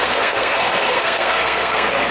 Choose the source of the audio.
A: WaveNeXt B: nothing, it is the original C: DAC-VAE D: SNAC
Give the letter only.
D